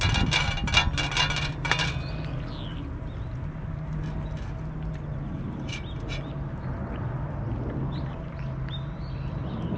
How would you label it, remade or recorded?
recorded